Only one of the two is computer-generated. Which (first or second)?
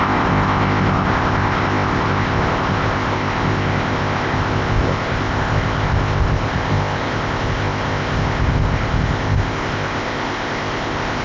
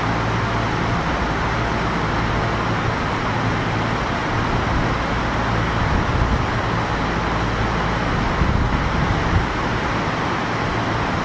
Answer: first